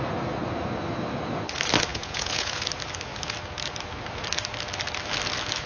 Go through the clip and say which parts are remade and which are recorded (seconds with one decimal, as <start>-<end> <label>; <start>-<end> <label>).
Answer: 0.0-1.9 recorded; 1.9-2.5 remade; 2.5-5.7 recorded